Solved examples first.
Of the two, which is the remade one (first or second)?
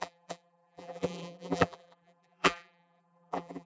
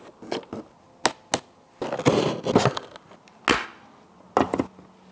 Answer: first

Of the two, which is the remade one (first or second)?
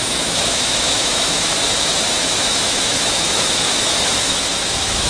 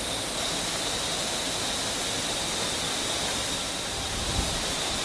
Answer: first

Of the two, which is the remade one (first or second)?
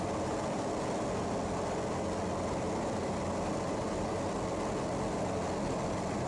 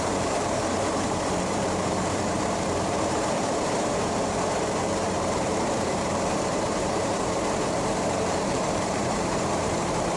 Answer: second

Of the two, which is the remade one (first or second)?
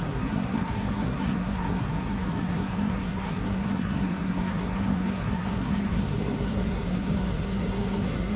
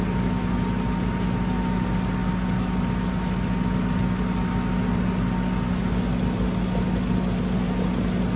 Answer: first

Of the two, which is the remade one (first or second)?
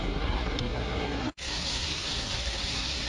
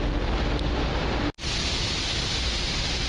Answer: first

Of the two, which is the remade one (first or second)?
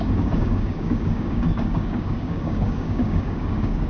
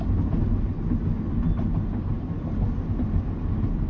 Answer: first